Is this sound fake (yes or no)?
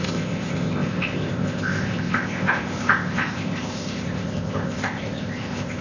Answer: yes